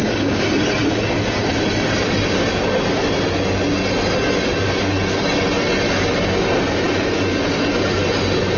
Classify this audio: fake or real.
real